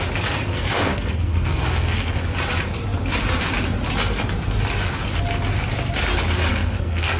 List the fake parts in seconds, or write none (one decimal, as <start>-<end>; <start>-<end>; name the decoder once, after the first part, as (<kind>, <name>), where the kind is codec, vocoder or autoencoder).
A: 0.5-2.2 (codec, SNAC); 6.5-7.2